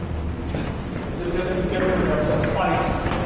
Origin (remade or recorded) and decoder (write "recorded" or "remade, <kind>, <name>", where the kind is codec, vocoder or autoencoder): recorded